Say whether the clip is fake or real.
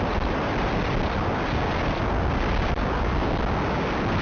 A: real